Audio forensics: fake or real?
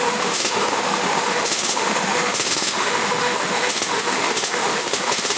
fake